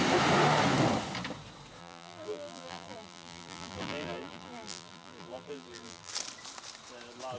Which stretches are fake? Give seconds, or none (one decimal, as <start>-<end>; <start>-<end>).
1.8-6.1